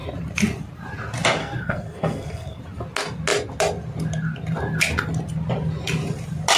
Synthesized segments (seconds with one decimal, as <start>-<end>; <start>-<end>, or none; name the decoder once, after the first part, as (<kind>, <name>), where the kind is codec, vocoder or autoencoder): 1.4-2.6 (codec, SNAC)

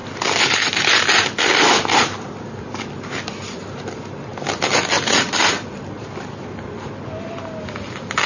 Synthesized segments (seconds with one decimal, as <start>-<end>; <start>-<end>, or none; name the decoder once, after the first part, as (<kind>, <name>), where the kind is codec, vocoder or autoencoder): none

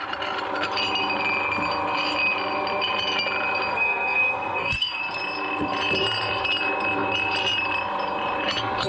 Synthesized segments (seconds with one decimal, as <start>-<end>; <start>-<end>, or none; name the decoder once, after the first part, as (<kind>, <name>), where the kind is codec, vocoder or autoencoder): 3.7-5.0 (codec, SNAC)

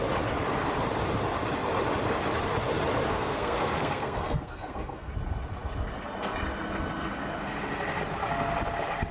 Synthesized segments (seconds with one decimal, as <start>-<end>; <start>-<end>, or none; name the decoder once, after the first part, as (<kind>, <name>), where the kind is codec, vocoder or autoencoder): 3.1-5.1 (codec, SNAC)

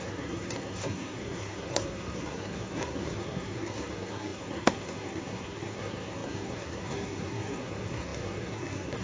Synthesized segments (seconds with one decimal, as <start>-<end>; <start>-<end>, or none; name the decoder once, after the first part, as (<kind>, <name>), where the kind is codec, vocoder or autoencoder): 0.0-9.0 (codec, SNAC)

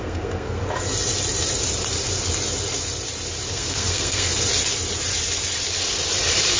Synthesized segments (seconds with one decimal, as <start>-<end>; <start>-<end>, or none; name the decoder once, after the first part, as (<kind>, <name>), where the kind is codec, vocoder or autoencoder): 0.0-0.6 (codec, SNAC); 3.5-4.3

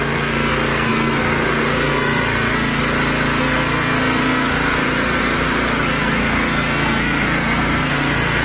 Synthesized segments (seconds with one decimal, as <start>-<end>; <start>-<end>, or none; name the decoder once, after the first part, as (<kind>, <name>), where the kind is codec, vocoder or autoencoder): 0.0-2.8 (codec, SNAC); 3.4-8.4